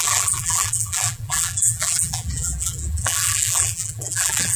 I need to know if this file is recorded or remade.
remade